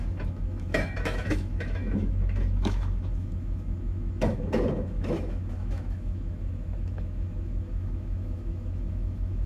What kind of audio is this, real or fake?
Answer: fake